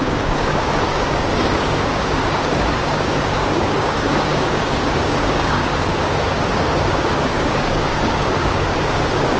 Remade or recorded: remade